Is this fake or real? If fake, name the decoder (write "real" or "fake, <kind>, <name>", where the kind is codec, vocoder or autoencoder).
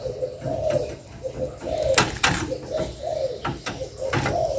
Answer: real